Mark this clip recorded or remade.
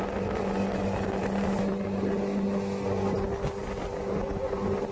recorded